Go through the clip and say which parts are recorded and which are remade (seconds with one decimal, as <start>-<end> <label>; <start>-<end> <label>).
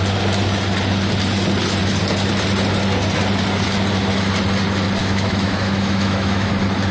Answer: 0.0-5.0 recorded; 5.0-6.5 remade; 6.5-6.9 recorded